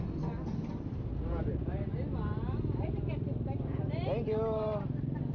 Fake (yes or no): no